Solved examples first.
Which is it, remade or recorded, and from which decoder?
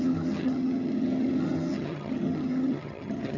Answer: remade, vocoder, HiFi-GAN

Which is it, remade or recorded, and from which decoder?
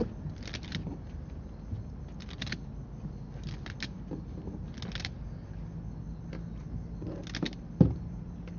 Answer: recorded